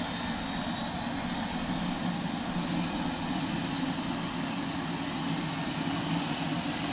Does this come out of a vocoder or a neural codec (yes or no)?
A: no